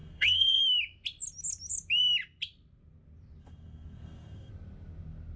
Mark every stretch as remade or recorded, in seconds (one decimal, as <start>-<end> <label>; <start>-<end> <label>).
0.0-0.6 remade; 0.6-3.4 recorded; 3.4-4.5 remade; 4.5-5.4 recorded